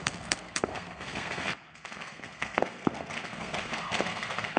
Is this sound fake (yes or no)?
yes